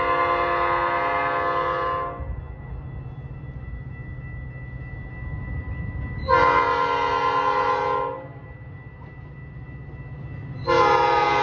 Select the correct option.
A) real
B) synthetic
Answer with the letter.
A